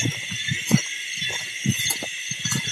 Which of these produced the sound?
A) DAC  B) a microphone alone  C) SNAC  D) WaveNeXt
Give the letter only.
B